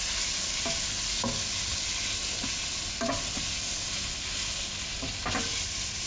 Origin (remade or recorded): recorded